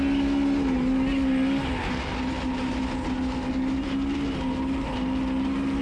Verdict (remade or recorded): recorded